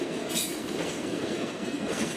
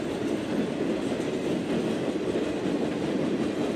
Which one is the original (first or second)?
second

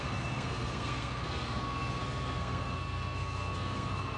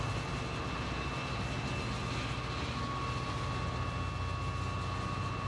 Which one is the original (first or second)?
second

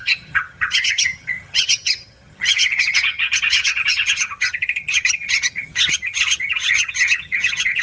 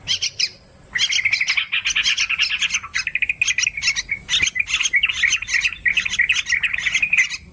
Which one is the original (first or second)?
second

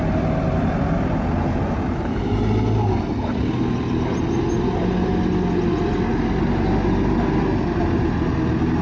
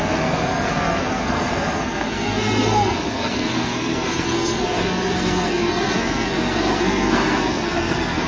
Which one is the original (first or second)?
first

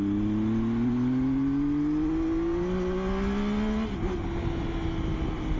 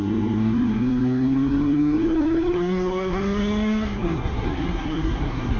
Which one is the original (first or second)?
first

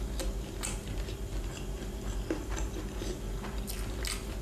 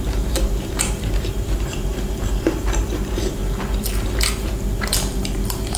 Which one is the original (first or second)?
first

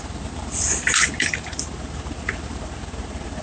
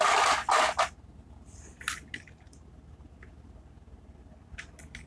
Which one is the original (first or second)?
second